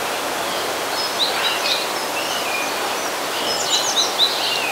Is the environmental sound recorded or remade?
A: recorded